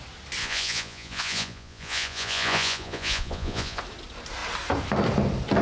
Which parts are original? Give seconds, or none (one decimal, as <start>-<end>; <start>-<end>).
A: 0.0-0.4; 3.8-5.6